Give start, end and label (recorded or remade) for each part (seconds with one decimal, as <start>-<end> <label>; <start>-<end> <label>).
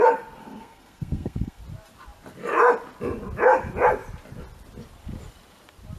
0.0-0.4 recorded; 0.4-1.6 remade; 1.6-6.0 recorded